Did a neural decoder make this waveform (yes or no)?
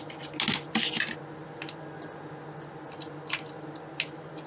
no